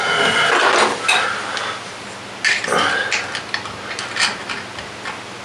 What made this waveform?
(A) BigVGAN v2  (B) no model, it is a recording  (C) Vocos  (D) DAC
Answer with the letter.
B